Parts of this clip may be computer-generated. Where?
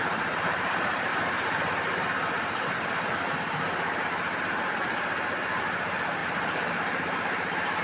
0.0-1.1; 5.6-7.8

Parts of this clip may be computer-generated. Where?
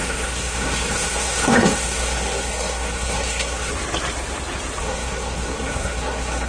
0.0-3.7; 4.8-6.5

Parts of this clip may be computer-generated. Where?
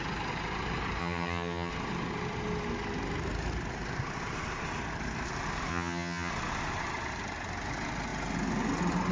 1.0-1.7; 5.7-6.3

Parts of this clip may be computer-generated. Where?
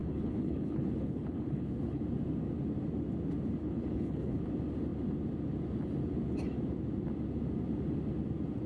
0.0-2.0; 3.6-4.4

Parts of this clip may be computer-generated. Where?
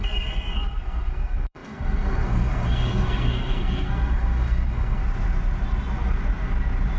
0.0-5.0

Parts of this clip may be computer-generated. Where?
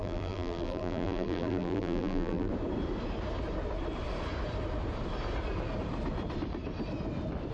0.0-2.5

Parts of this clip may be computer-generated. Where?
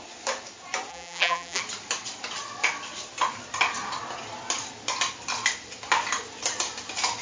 0.9-1.6